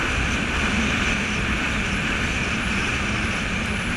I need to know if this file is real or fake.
fake